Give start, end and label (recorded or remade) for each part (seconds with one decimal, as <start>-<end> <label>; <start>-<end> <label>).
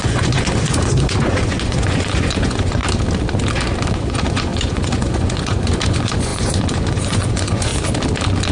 0.0-2.8 remade; 2.8-3.9 recorded; 3.9-7.7 remade; 7.7-8.5 recorded